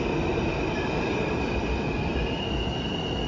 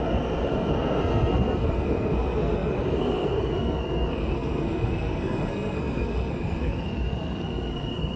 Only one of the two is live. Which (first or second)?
first